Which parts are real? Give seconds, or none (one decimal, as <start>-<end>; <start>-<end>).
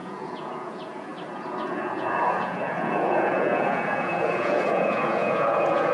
1.1-1.8